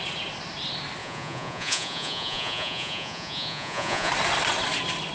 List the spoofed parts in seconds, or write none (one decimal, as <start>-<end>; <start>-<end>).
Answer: 1.0-4.1